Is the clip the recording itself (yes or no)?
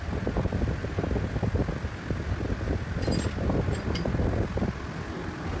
yes